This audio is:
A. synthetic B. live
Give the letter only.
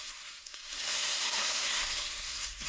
A